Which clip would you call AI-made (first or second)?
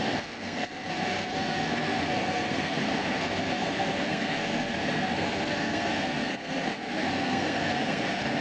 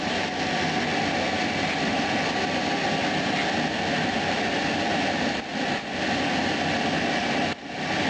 first